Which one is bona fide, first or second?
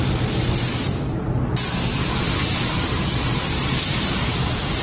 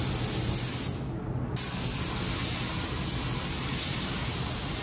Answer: second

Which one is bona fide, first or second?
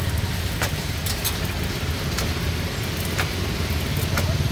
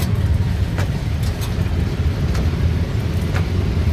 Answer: first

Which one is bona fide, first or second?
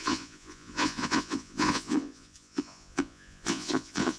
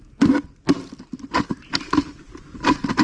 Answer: second